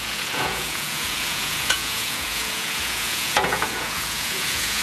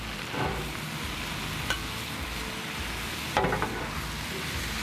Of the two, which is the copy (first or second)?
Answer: first